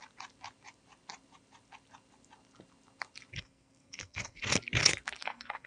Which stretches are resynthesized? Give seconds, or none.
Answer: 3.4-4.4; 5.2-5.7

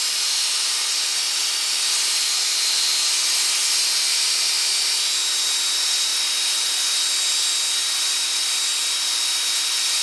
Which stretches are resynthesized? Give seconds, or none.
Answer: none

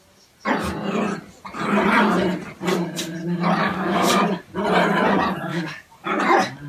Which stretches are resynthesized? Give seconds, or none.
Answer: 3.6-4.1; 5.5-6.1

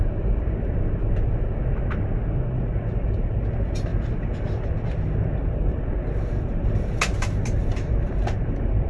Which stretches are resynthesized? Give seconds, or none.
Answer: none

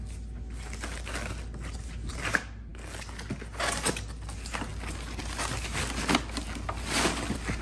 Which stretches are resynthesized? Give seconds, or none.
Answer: none